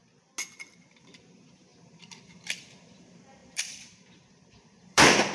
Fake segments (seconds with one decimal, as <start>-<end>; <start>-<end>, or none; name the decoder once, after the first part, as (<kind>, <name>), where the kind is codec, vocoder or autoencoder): 0.6-5.3 (vocoder, BigVGAN v2)